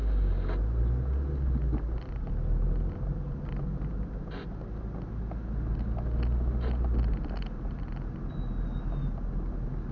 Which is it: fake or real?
real